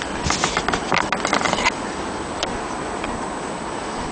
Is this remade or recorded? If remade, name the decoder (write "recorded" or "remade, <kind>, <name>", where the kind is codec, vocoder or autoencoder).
recorded